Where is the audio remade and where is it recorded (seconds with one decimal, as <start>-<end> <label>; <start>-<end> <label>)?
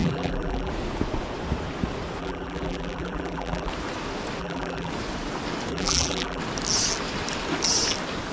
0.0-0.7 remade; 0.7-2.2 recorded; 2.2-3.7 remade; 3.7-4.4 recorded; 4.4-4.9 remade; 4.9-5.7 recorded; 5.7-6.4 remade; 6.4-8.3 recorded